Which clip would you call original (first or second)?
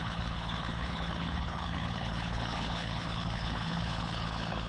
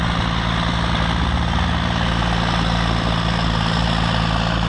second